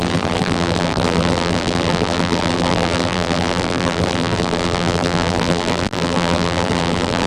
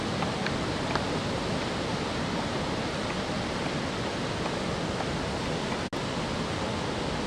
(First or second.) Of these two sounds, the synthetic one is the first